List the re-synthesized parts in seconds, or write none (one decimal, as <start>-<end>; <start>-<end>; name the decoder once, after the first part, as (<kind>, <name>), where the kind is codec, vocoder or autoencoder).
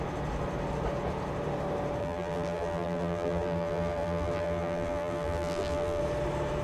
2.0-6.0 (vocoder, BigVGAN v2)